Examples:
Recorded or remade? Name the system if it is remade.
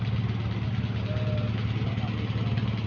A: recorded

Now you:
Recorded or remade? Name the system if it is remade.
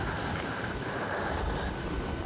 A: recorded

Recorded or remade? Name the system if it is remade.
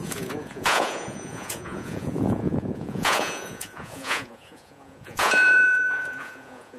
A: remade, vocoder, Vocos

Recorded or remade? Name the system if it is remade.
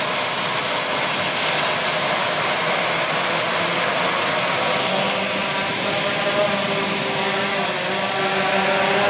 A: recorded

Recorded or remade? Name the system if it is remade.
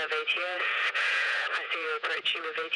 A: remade, vocoder, Vocos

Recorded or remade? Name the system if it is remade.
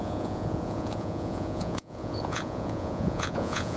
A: remade, vocoder, Vocos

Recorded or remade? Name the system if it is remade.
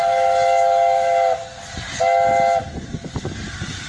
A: recorded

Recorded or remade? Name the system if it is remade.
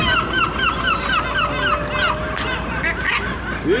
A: recorded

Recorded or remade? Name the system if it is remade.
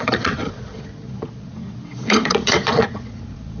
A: remade, vocoder, Vocos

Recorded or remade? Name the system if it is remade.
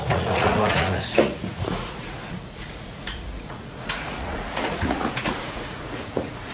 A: remade, vocoder, Vocos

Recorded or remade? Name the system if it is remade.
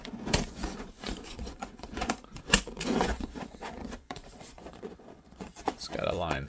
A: remade, vocoder, Vocos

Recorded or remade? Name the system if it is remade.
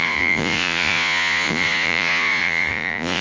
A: remade, vocoder, Vocos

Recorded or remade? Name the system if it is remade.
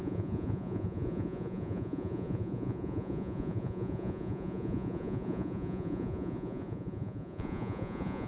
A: remade, vocoder, Vocos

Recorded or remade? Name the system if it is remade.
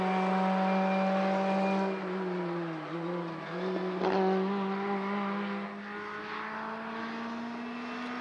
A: recorded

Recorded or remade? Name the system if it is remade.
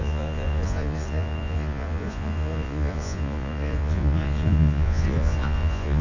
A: remade, vocoder, Vocos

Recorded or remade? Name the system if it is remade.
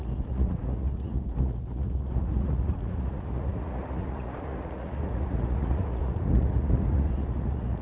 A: remade, vocoder, Vocos